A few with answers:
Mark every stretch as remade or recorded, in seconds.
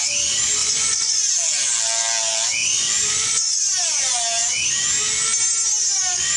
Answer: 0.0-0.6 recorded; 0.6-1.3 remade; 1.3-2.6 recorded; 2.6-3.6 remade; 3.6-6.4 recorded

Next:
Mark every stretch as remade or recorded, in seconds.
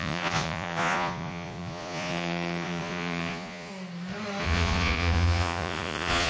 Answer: 0.0-3.7 remade; 3.7-4.4 recorded; 4.4-6.3 remade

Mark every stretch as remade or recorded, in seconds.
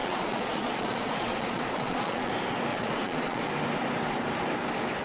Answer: 0.0-2.3 remade; 2.3-2.7 recorded; 2.7-3.5 remade; 3.5-5.0 recorded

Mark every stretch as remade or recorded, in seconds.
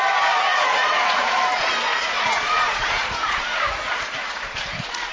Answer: 0.0-0.5 recorded; 0.5-1.4 remade; 1.4-1.9 recorded; 1.9-5.1 remade